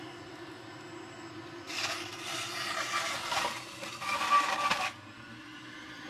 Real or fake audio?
real